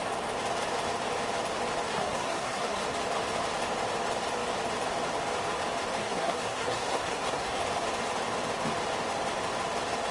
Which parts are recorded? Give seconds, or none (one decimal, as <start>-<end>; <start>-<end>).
0.0-1.9; 2.8-6.0; 7.6-10.1

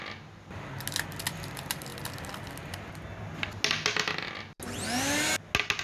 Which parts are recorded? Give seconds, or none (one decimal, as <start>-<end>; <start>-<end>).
0.0-5.8

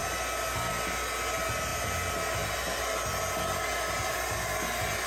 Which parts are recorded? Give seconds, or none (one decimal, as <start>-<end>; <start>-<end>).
0.0-5.1

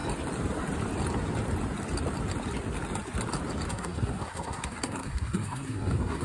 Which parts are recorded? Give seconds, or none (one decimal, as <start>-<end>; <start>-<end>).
0.0-3.7

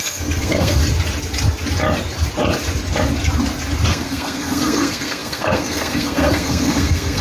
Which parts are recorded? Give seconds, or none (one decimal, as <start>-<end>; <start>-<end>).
0.8-3.9